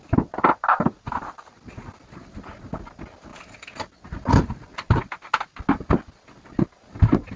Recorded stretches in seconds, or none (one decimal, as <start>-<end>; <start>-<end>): 0.0-7.4